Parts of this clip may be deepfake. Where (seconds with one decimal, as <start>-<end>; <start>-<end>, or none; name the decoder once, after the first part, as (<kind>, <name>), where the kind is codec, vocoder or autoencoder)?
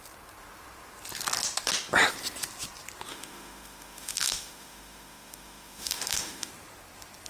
3.1-6.5 (autoencoder, DAC-VAE)